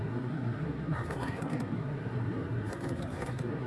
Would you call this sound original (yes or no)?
no